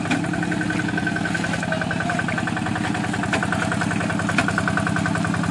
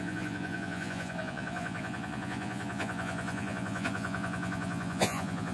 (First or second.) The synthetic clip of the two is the second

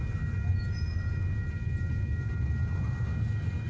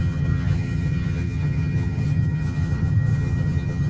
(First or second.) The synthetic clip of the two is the second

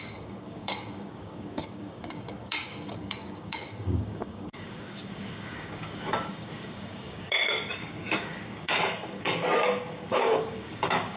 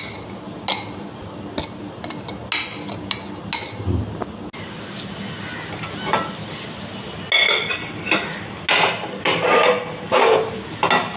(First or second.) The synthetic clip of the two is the first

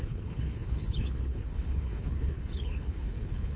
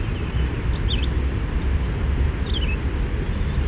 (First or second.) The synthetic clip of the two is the first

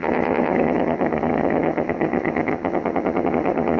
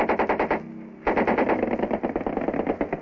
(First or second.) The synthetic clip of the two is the first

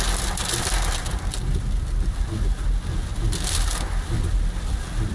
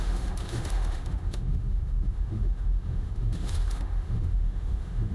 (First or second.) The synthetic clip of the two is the second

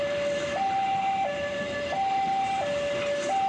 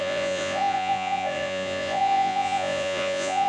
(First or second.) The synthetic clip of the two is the second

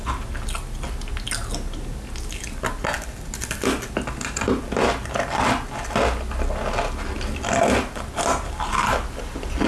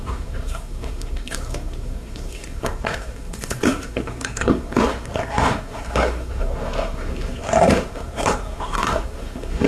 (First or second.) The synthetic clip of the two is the second